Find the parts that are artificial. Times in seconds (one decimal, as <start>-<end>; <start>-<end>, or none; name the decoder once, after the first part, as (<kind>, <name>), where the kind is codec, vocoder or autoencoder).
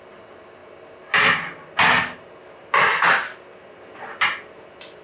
none